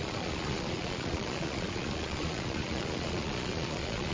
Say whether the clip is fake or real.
fake